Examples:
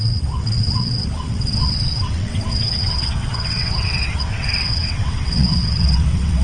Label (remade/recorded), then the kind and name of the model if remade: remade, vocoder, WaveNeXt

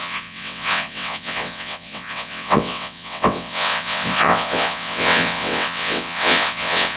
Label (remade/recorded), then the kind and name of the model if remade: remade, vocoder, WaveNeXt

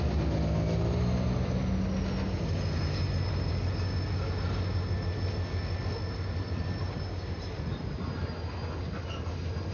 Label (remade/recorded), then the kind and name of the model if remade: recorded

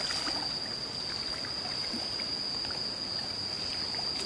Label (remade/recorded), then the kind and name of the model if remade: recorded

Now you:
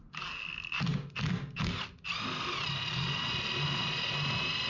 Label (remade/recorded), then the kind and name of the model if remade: recorded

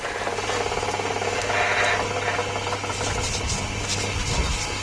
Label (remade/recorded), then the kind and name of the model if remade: recorded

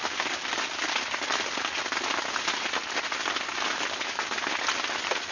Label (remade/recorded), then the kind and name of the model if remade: recorded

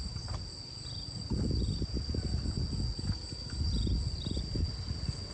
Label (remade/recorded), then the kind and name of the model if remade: recorded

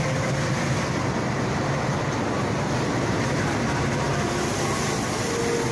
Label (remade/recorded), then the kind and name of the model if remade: recorded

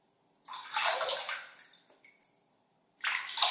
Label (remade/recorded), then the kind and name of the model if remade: recorded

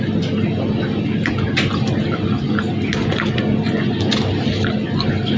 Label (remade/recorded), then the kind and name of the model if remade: recorded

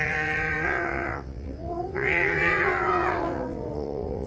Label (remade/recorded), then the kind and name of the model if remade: remade, vocoder, WaveNeXt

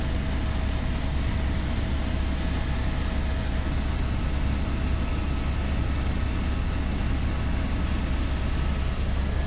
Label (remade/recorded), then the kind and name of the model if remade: recorded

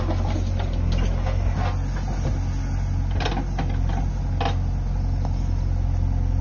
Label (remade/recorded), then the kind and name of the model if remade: recorded